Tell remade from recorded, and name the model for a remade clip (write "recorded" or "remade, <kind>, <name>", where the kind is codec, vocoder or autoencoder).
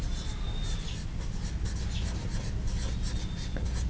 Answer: recorded